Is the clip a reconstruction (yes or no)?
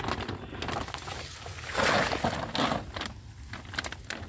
no